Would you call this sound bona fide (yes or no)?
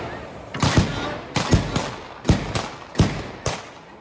yes